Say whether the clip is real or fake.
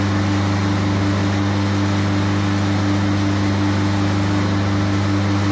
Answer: real